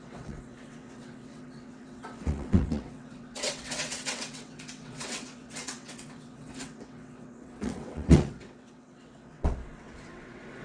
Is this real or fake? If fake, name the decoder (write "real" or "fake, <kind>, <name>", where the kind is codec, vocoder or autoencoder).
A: fake, vocoder, WaveNeXt